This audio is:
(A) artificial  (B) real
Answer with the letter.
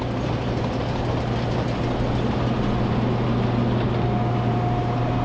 B